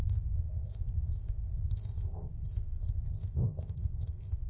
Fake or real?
fake